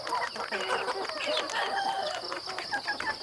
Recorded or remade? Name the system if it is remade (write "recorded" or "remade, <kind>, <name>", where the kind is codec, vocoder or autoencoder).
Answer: recorded